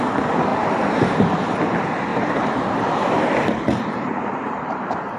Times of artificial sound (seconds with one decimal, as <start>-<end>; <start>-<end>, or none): 0.5-1.4; 2.1-5.2